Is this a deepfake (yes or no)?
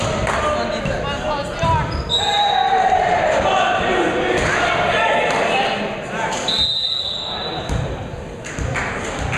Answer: no